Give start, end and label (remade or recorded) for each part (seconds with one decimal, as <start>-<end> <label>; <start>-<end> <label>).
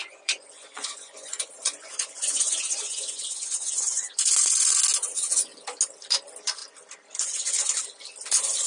0.0-4.8 remade; 4.8-8.7 recorded